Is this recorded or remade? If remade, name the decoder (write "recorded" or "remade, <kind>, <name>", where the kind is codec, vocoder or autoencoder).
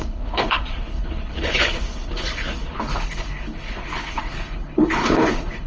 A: remade, codec, HILCodec